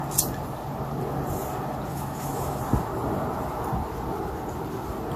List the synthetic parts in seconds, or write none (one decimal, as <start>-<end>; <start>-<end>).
1.9-2.6